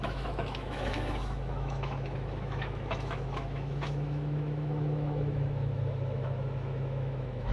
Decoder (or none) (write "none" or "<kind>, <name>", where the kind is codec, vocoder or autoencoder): autoencoder, DAC-VAE